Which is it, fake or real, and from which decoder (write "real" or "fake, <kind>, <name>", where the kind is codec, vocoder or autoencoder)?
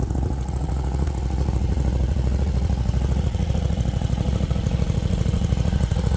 fake, vocoder, Vocos